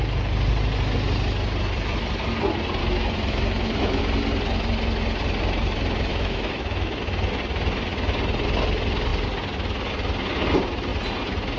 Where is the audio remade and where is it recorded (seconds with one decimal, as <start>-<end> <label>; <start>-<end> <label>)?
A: 0.0-2.8 recorded; 2.8-4.0 remade; 4.0-6.1 recorded; 6.1-7.0 remade; 7.0-11.6 recorded